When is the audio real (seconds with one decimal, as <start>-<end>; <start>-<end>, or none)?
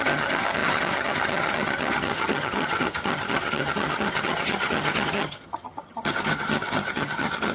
none